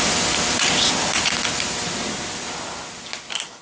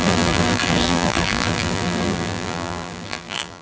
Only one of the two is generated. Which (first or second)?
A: second